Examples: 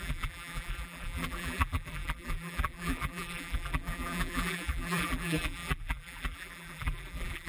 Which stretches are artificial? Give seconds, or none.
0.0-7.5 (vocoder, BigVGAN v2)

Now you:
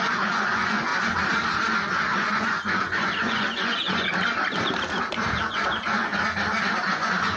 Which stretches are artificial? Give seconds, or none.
0.0-0.9 (vocoder, Vocos); 1.9-4.1; 5.4-6.1; 6.9-7.4

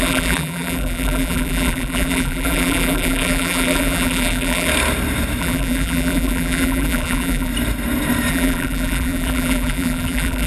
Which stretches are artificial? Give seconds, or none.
0.0-4.7 (vocoder, BigVGAN v2); 5.4-7.5; 8.3-10.5

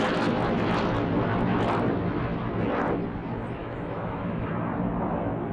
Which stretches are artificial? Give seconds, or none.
3.6-4.5 (autoencoder, DAC-VAE)

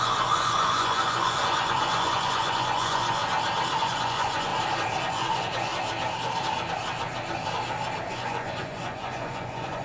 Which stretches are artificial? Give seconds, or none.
0.0-3.2 (vocoder, Vocos); 3.8-4.5; 5.1-5.7; 8.1-9.8

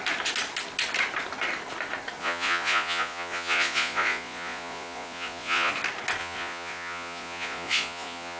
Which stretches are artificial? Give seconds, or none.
2.2-5.7 (vocoder, Vocos); 6.2-8.4

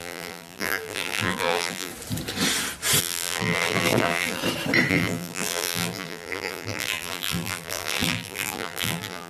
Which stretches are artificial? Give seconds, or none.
0.0-1.9 (vocoder, BigVGAN v2); 3.0-4.4; 4.9-9.3